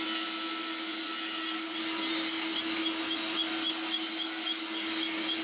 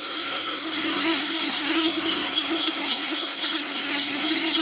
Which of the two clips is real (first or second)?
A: first